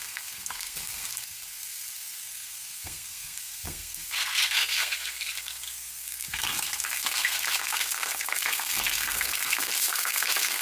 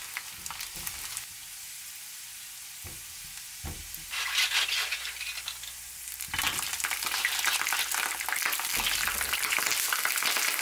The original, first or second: second